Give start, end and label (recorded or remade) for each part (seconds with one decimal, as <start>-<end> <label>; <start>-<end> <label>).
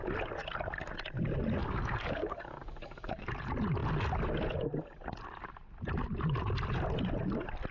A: 0.0-1.6 recorded; 1.6-3.3 remade; 3.3-7.7 recorded